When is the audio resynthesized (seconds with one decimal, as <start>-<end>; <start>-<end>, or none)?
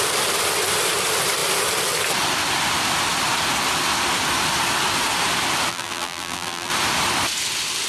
5.7-6.7